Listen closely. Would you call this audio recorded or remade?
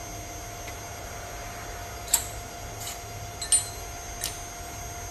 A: recorded